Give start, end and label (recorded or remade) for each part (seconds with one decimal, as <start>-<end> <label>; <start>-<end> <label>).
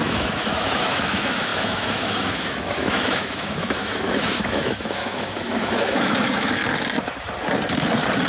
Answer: 0.0-6.6 remade; 6.6-8.3 recorded